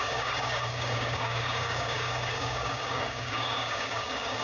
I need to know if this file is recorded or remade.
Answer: remade